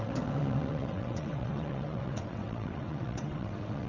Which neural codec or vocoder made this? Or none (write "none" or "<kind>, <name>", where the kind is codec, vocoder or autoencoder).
vocoder, WaveNeXt